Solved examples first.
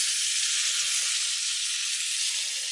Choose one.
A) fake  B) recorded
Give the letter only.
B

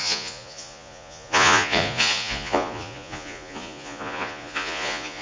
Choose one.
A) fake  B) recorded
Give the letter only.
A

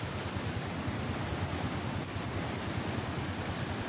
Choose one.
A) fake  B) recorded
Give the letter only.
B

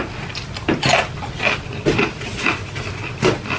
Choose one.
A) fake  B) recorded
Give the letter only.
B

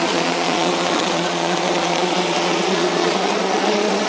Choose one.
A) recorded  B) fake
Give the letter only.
B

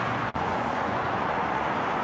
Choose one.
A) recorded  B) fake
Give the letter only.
B